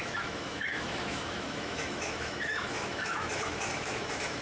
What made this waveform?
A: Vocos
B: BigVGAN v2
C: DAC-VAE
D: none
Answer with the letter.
C